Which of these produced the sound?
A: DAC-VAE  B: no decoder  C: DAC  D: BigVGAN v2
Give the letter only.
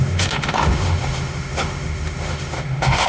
A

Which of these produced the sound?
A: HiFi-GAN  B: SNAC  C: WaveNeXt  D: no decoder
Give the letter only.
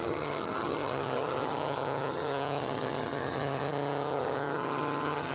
A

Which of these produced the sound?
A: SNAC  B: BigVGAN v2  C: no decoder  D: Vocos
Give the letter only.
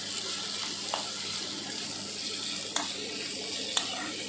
C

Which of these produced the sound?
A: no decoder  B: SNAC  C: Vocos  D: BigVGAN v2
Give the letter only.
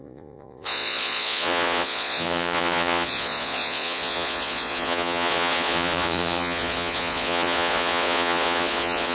C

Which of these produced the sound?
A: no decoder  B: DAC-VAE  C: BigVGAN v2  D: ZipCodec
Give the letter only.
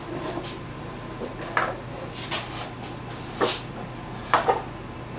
A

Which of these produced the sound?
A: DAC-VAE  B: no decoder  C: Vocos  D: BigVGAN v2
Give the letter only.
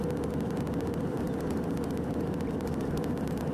B